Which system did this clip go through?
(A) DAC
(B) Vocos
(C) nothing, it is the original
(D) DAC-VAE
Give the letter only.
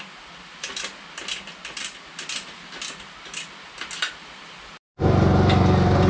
C